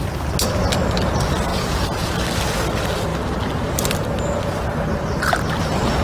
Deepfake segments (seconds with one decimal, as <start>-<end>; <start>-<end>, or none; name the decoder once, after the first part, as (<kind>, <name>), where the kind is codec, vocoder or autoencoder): 1.5-2.1 (vocoder, Vocos)